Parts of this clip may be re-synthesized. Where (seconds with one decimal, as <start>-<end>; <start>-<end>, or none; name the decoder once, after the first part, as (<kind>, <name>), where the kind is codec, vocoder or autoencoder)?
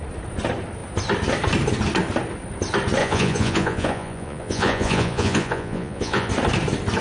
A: 3.0-6.3 (vocoder, Vocos)